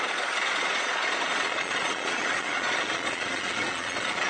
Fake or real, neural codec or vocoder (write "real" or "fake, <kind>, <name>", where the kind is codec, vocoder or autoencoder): fake, vocoder, Vocos